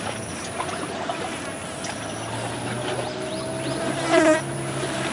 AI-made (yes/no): no